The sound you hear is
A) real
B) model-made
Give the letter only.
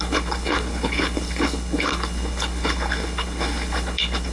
B